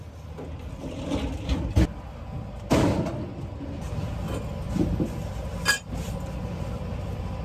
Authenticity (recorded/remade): recorded